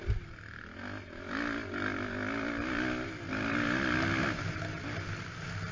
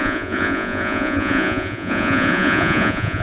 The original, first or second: first